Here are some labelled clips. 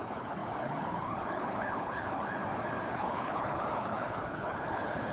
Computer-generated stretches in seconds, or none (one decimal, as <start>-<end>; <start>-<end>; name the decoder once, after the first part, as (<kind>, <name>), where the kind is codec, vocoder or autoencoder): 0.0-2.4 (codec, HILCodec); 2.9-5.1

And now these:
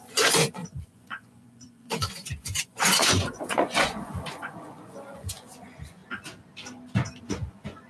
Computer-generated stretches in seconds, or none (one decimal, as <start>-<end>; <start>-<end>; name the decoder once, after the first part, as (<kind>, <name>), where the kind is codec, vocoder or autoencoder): 0.0-6.0 (vocoder, Vocos); 7.2-7.9

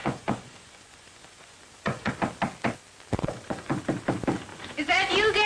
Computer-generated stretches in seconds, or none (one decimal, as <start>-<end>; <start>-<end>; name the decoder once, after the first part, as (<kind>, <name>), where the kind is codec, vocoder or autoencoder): 0.0-2.1 (vocoder, Vocos); 3.1-3.8; 4.5-5.5

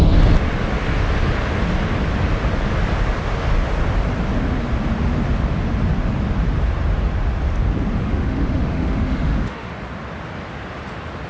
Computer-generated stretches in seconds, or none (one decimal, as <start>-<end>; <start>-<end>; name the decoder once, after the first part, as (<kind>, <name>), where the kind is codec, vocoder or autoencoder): 8.0-9.7 (autoencoder, DAC-VAE)

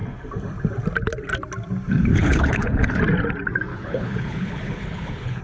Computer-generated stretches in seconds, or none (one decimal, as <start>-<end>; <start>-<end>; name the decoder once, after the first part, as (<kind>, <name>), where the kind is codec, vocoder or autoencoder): 2.1-3.0 (codec, HILCodec); 3.7-5.4

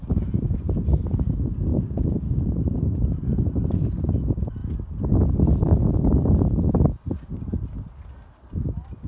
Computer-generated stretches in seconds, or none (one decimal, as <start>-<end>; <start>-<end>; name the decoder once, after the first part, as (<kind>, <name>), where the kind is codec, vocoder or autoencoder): 1.7-2.4 (codec, DAC)

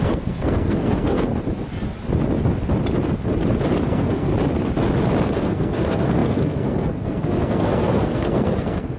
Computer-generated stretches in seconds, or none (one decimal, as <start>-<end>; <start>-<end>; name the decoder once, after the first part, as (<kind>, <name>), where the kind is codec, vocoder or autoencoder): 0.0-1.3 (codec, SNAC); 3.8-4.3; 5.2-9.0

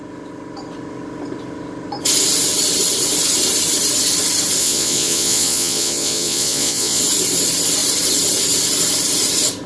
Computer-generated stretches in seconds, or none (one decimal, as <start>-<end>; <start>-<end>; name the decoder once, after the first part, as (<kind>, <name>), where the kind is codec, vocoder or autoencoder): 4.6-7.0 (vocoder, Vocos)